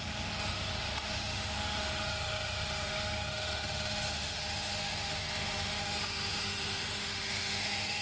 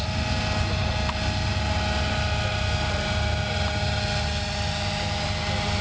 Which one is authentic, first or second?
second